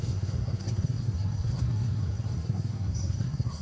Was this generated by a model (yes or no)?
yes